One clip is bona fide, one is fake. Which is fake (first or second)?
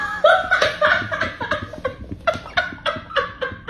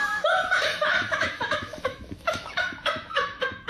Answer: second